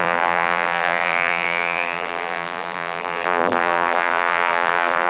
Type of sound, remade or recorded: remade